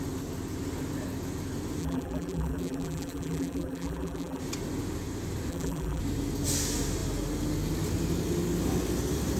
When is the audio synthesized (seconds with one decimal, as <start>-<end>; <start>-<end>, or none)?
1.8-4.4; 5.5-6.0